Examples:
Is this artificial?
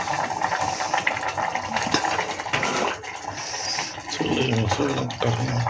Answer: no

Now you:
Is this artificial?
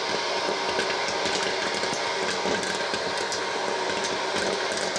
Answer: no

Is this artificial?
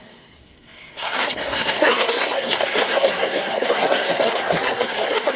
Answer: yes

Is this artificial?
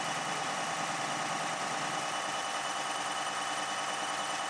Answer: no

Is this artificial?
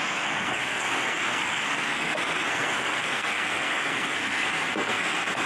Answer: yes